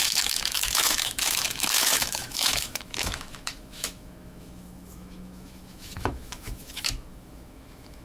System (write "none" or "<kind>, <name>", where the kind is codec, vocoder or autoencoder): autoencoder, DAC-VAE